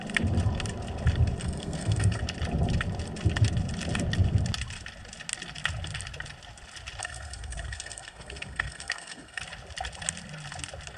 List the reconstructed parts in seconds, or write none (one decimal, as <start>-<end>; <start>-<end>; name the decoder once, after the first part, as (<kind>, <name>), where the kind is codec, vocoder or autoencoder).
1.4-2.2 (codec, SNAC); 7.0-9.4